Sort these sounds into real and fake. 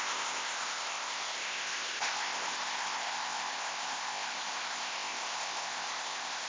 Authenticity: fake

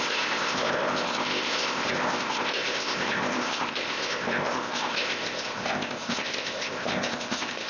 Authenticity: fake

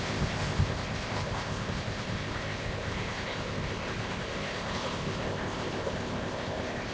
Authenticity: fake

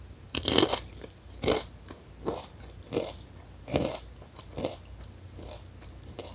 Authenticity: real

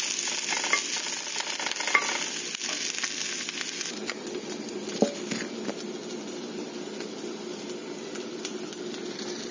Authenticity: real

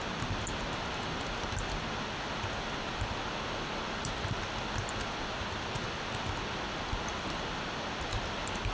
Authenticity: real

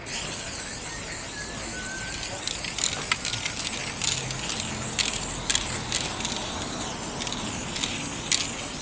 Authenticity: real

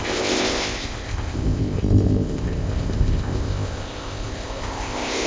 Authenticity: fake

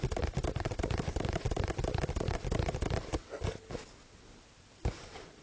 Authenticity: real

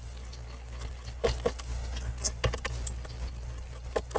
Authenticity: real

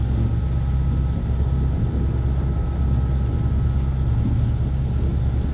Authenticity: real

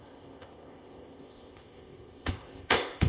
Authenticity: fake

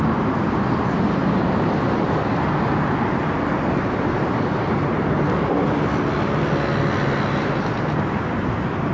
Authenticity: real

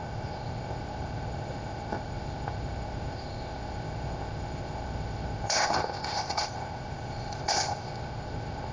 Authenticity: fake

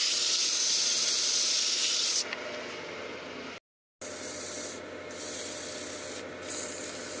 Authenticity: real